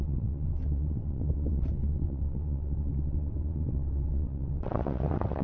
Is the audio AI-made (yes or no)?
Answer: yes